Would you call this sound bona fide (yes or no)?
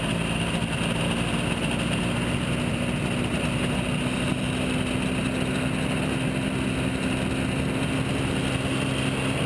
yes